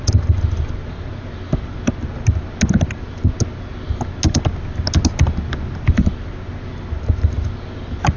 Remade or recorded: recorded